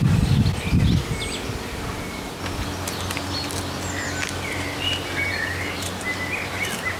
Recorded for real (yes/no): yes